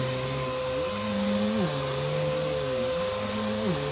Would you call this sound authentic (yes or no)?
yes